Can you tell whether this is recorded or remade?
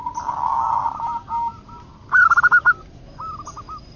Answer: recorded